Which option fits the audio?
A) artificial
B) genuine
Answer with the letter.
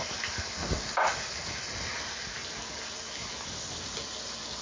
B